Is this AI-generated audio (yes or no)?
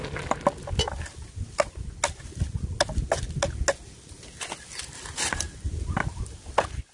no